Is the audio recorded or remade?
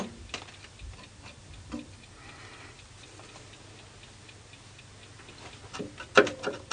recorded